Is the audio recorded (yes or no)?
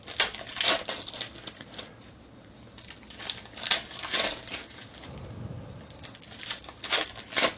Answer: yes